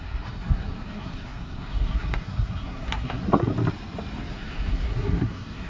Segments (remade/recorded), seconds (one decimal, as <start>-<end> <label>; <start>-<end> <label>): 0.0-3.5 remade; 3.5-4.3 recorded; 4.3-5.7 remade